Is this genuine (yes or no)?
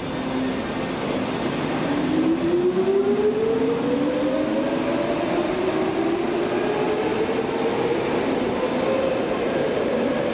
yes